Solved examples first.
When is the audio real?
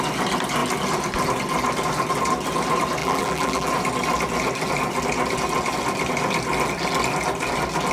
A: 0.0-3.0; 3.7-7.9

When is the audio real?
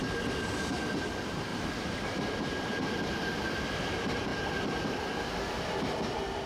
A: 0.0-1.5; 3.8-6.5